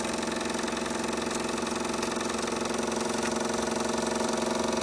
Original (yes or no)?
yes